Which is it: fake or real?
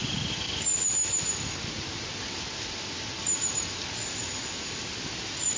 real